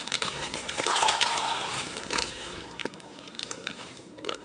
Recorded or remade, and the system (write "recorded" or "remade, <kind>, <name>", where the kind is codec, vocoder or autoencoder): remade, codec, SNAC